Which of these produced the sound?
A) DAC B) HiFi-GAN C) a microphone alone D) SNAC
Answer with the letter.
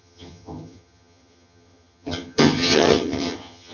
B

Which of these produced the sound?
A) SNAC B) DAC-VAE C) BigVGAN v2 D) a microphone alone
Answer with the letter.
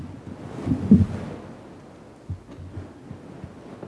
D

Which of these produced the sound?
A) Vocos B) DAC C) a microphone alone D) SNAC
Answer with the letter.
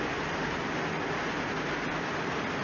C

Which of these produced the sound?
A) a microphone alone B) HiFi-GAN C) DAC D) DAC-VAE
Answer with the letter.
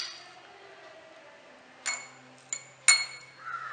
A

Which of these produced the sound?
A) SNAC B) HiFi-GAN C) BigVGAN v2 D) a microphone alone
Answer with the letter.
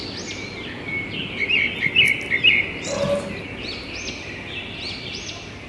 D